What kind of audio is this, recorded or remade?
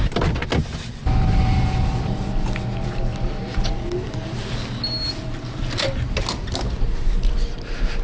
recorded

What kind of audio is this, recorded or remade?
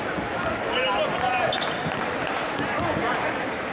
recorded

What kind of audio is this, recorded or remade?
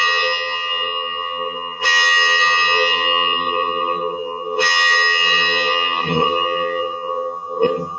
remade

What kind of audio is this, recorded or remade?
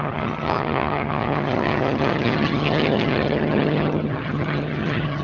remade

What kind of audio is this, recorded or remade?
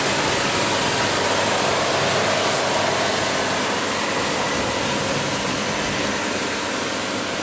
recorded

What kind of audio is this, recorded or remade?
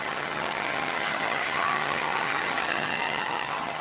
remade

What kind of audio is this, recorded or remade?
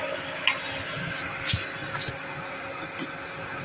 recorded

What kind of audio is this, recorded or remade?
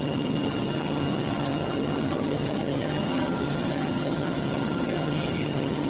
remade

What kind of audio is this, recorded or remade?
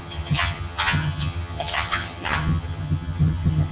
remade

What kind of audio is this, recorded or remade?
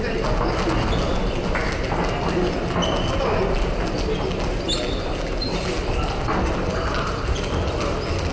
recorded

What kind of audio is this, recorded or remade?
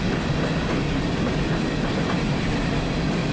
recorded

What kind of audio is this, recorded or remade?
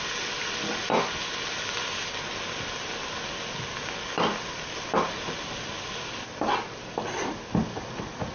recorded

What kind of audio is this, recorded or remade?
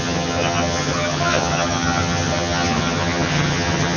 remade